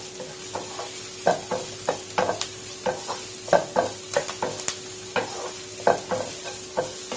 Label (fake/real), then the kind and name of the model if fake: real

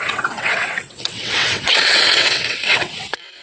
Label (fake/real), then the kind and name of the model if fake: fake, vocoder, WaveNeXt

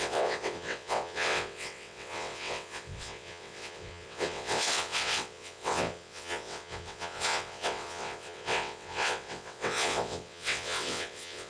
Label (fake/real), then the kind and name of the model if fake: fake, vocoder, WaveNeXt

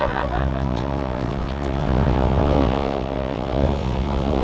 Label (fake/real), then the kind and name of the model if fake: fake, vocoder, WaveNeXt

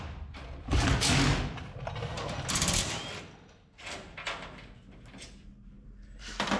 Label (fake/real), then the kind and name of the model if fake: real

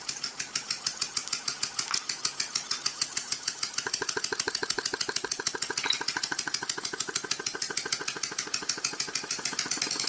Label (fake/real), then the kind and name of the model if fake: real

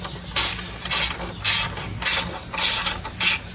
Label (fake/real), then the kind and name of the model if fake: real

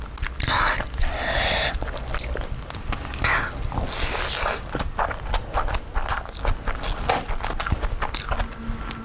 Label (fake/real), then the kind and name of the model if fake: real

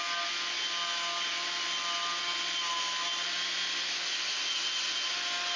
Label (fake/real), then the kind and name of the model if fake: real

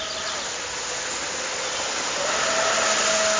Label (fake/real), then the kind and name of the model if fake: real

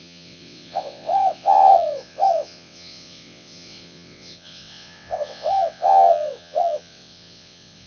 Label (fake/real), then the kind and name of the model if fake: fake, vocoder, WaveNeXt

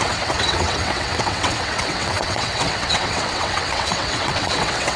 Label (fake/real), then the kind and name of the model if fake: fake, vocoder, WaveNeXt